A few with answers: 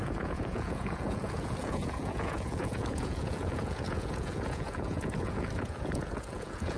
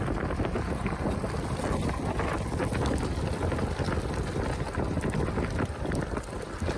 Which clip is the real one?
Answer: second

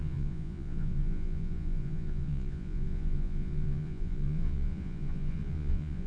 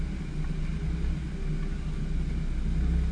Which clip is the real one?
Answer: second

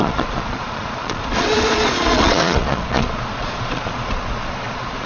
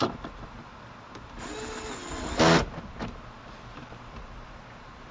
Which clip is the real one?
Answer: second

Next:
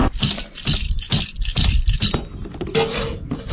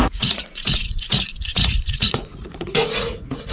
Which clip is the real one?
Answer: first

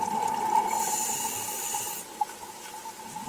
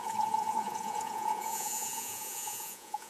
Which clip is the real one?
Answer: first